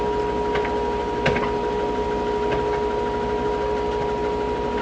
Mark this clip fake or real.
fake